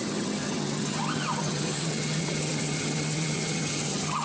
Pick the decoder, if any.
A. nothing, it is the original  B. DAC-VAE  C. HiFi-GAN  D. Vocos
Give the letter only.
C